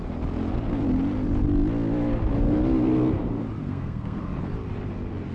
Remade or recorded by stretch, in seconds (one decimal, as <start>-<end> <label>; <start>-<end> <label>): 0.0-3.6 recorded; 3.6-4.2 remade; 4.2-5.3 recorded

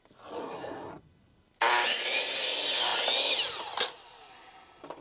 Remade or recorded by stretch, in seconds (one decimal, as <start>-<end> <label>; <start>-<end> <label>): 0.0-0.4 recorded; 0.4-0.9 remade; 0.9-5.0 recorded

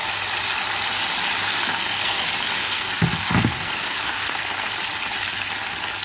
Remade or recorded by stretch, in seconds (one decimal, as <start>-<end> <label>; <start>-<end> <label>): 0.0-1.5 recorded; 1.5-2.2 remade; 2.2-2.6 recorded; 2.6-4.7 remade; 4.7-6.0 recorded